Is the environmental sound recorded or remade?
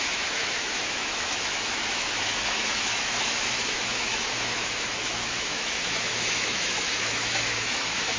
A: remade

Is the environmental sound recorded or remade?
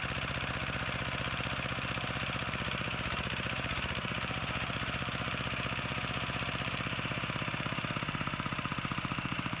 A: remade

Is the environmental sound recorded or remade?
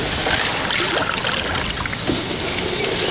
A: recorded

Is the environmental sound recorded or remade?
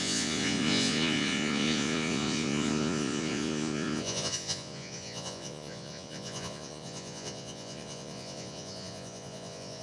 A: remade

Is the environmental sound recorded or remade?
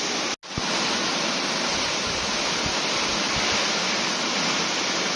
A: recorded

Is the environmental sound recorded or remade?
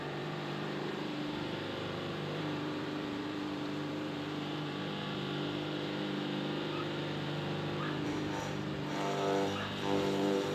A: remade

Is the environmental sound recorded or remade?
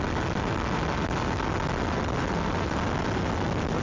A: recorded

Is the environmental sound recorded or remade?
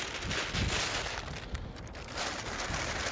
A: recorded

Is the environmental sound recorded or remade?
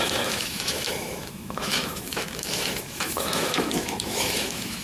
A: remade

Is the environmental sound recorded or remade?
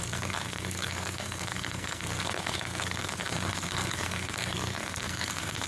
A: remade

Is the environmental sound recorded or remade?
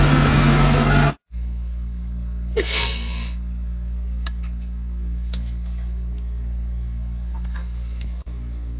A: remade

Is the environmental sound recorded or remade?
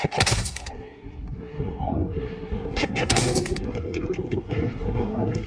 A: remade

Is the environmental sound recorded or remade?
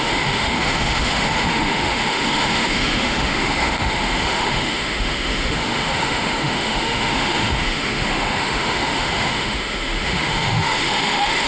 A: remade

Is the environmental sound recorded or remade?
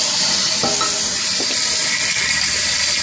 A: recorded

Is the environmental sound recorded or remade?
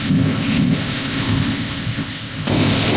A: remade